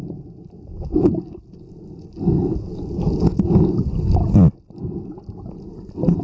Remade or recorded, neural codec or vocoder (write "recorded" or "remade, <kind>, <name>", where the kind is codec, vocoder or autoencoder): recorded